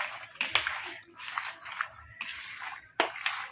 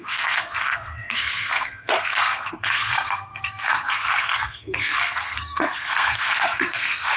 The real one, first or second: first